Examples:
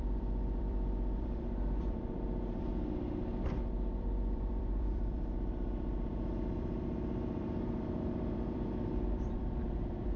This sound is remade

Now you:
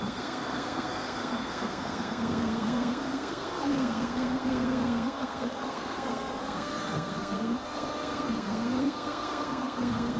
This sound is remade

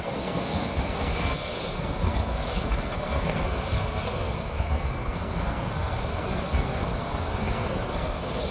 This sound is remade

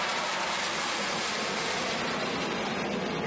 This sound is recorded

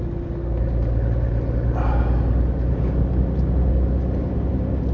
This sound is recorded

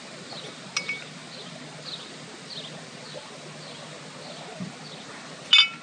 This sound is recorded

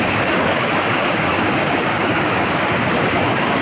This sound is remade